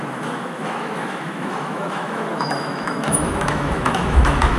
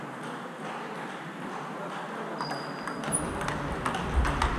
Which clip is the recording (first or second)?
second